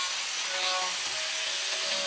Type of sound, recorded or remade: recorded